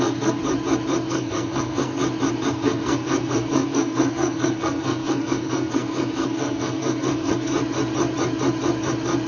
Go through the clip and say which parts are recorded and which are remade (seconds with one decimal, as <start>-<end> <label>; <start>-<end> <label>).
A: 0.0-0.4 remade; 0.4-1.1 recorded; 1.1-2.0 remade; 2.0-2.5 recorded; 2.5-7.5 remade; 7.5-9.3 recorded